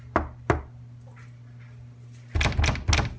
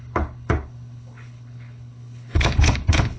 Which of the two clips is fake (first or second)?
second